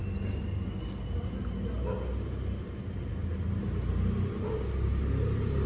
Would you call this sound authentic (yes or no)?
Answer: yes